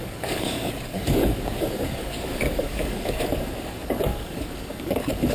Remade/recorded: remade